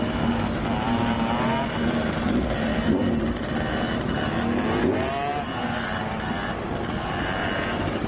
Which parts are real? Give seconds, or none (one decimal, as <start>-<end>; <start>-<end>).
0.0-2.7; 4.3-5.3; 7.0-8.1